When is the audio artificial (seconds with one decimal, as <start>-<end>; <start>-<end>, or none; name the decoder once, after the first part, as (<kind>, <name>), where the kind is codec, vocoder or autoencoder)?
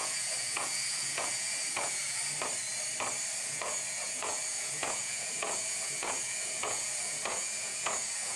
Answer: 0.0-2.2 (vocoder, Vocos); 3.4-8.4